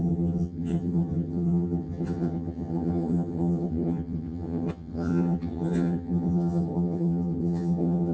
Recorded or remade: remade